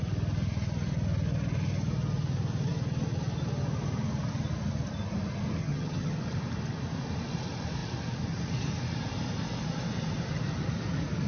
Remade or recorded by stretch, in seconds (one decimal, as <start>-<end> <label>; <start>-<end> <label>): 0.0-5.6 recorded; 5.6-6.2 remade; 6.2-11.3 recorded